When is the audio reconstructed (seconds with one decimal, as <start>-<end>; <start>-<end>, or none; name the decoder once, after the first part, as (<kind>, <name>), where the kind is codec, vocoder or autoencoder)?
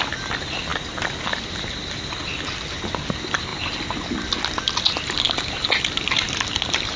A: none